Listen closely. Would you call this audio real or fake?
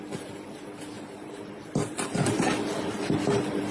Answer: fake